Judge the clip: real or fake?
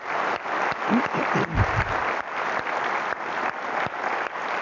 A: real